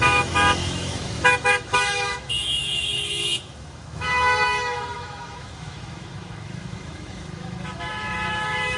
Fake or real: fake